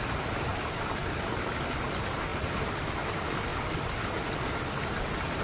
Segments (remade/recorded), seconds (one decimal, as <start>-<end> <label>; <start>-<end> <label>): 0.0-0.5 recorded; 0.5-1.6 remade; 1.6-2.3 recorded; 2.3-2.9 remade; 2.9-3.5 recorded; 3.5-4.6 remade; 4.6-5.4 recorded